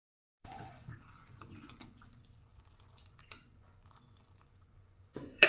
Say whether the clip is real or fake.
fake